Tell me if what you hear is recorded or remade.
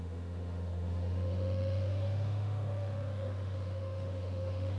remade